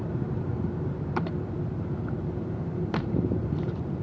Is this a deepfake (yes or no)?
yes